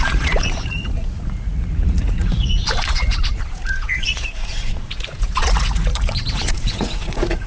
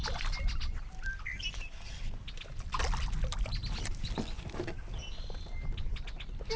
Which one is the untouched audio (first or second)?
second